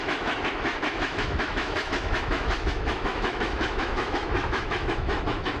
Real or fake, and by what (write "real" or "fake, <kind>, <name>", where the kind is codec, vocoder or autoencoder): fake, autoencoder, DAC-VAE